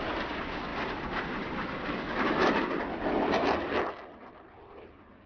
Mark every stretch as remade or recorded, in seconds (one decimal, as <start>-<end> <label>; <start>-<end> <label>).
0.0-5.3 recorded